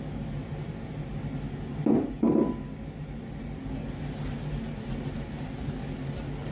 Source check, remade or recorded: recorded